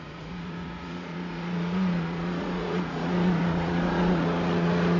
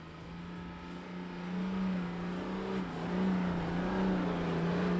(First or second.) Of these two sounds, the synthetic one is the first